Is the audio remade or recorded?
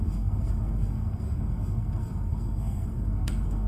remade